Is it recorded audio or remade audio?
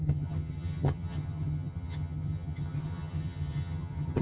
remade